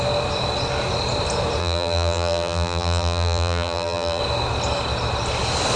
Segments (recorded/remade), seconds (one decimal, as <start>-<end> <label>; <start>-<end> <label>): 0.0-1.6 recorded; 1.6-4.2 remade; 4.2-5.8 recorded

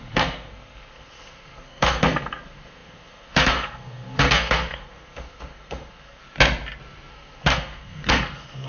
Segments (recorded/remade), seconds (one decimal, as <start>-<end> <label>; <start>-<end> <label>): 0.0-6.2 remade; 6.2-7.1 recorded; 7.1-8.7 remade

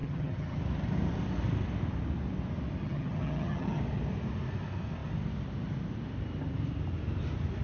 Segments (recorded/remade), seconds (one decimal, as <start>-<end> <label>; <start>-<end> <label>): 0.0-0.6 remade; 0.6-2.8 recorded; 2.8-3.8 remade; 3.8-7.6 recorded

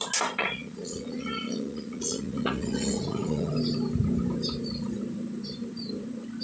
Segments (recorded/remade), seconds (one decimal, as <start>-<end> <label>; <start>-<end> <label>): 0.0-0.4 recorded; 0.4-3.5 remade; 3.5-6.4 recorded

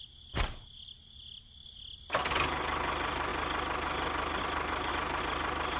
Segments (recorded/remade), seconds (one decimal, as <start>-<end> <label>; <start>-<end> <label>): 0.0-5.8 recorded